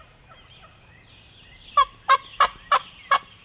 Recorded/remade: remade